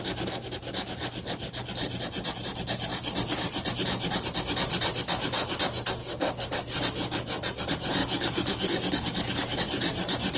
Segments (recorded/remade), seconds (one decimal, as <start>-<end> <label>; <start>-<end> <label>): 0.0-6.0 recorded; 6.0-6.8 remade; 6.8-8.0 recorded; 8.0-9.6 remade; 9.6-10.4 recorded